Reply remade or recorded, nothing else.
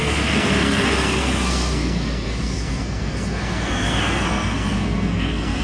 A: remade